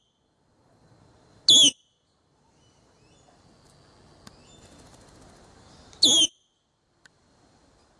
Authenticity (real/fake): real